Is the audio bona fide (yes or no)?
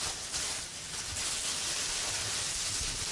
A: yes